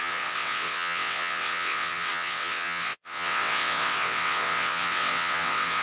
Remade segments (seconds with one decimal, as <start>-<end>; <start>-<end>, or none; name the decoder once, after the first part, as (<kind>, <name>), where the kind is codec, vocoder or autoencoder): 0.0-5.8 (vocoder, WaveNeXt)